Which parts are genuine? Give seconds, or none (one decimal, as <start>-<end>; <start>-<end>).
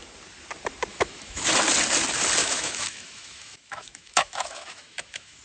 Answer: 0.0-0.9; 1.5-2.4